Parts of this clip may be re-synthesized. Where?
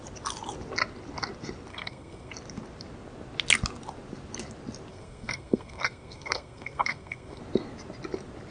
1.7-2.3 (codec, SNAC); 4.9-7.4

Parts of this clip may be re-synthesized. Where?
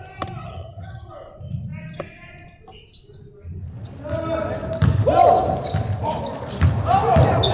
0.4-1.1 (vocoder, HiFi-GAN)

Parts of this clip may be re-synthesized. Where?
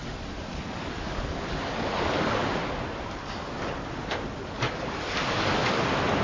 none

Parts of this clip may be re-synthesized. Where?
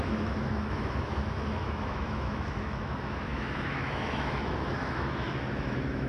0.0-6.1 (autoencoder, DAC-VAE)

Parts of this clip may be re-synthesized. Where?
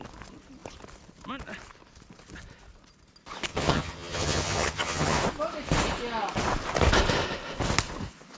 3.5-5.2 (vocoder, HiFi-GAN)